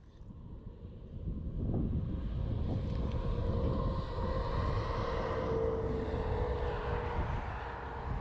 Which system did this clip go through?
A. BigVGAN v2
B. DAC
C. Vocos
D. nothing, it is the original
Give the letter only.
D